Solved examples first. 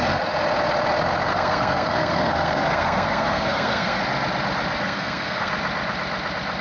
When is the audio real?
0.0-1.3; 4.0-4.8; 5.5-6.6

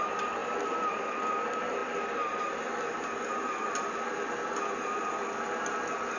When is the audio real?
0.0-6.2

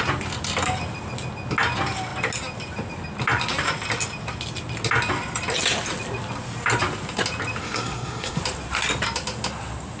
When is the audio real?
0.0-7.6; 8.4-10.0

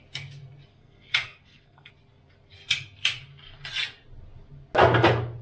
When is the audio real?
0.0-0.7; 1.9-5.4

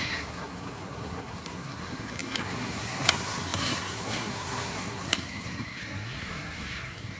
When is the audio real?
none

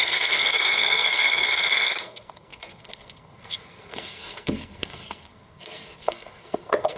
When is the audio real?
none

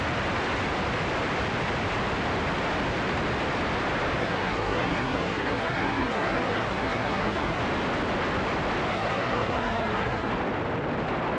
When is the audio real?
0.0-4.2; 7.6-8.9; 10.3-11.4